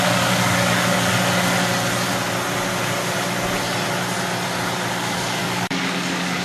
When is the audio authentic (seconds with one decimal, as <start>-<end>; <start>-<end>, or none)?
1.1-4.9